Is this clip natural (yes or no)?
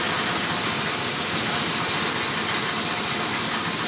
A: yes